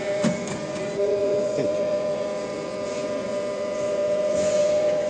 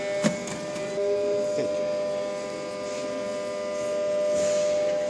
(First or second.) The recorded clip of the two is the second